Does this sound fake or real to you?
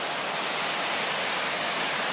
fake